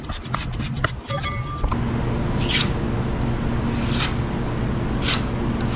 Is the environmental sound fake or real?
real